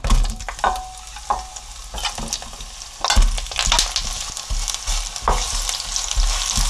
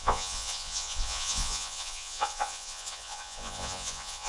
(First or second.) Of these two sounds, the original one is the first